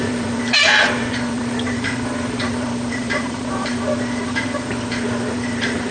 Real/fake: fake